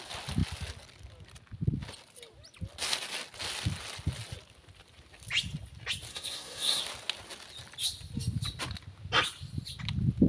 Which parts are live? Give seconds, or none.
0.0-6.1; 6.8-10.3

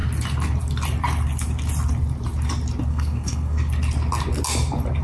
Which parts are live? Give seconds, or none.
0.0-2.9; 3.7-5.0

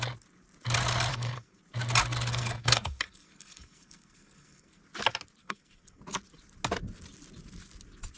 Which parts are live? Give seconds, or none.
0.0-1.1; 1.6-2.3; 4.8-5.4; 6.0-8.2

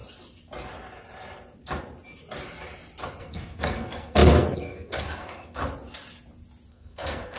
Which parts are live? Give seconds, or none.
0.0-3.2; 5.6-6.7

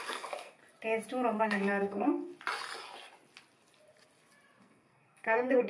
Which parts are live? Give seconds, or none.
0.6-1.4; 2.3-4.6

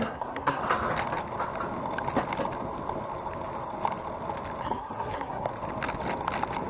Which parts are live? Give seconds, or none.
0.6-4.6; 5.5-6.7

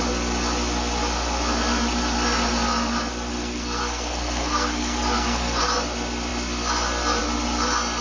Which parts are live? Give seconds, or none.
0.0-3.3; 5.6-8.0

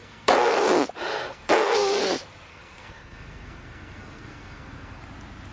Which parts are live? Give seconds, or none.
0.7-1.1; 2.0-2.5; 5.0-5.5